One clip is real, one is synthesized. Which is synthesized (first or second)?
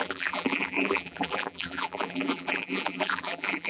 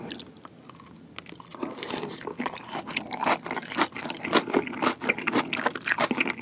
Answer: first